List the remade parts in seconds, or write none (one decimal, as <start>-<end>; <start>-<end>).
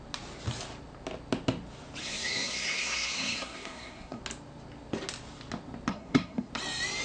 2.0-4.2; 5.9-6.5